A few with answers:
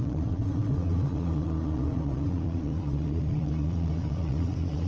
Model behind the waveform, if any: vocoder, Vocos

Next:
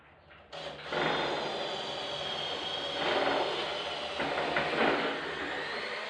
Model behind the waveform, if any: none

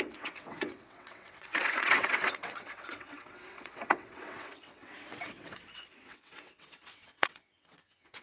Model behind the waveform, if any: vocoder, WaveNeXt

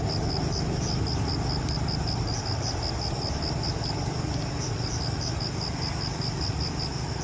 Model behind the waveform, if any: none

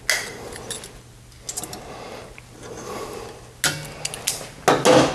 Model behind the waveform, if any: none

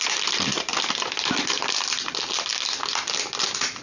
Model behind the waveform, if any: none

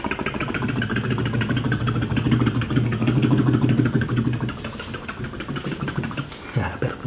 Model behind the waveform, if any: none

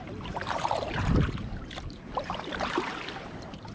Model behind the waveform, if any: vocoder, BigVGAN v2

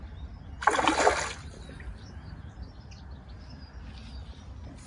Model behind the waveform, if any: none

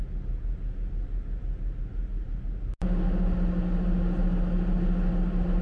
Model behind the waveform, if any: none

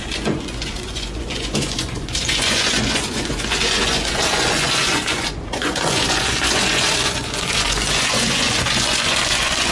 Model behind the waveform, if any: vocoder, Vocos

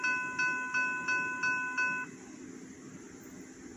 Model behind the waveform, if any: none